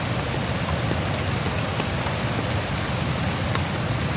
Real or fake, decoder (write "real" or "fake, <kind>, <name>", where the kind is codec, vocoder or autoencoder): real